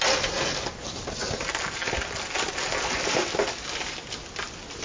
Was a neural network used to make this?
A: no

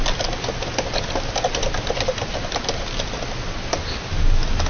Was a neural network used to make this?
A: no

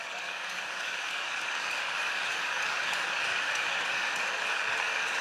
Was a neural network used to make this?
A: yes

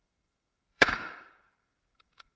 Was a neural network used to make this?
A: yes